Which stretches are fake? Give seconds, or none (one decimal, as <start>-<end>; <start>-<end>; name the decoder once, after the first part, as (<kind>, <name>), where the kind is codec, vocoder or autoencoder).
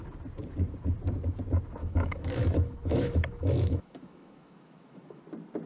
1.8-5.2 (autoencoder, DAC-VAE)